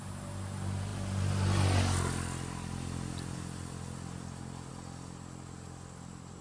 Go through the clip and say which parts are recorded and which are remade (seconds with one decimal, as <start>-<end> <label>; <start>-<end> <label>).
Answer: 0.0-6.4 recorded